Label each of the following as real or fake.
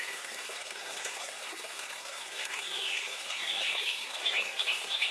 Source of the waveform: fake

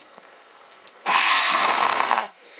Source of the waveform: fake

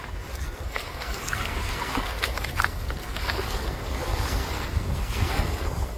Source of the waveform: fake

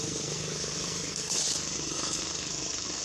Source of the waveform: fake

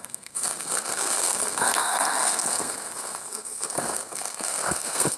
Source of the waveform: fake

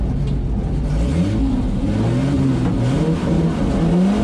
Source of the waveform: real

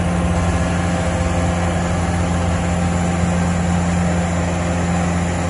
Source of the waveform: real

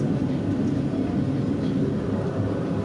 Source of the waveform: real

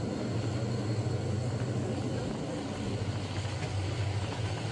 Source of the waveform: real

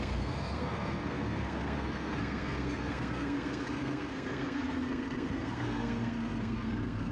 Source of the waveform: fake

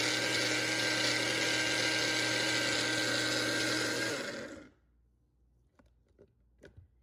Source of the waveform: real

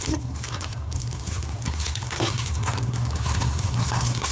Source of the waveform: fake